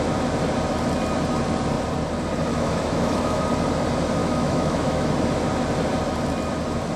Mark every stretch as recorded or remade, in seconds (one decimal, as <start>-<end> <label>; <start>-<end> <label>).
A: 0.0-2.5 recorded; 2.5-3.4 remade; 3.4-4.2 recorded; 4.2-5.1 remade; 5.1-7.0 recorded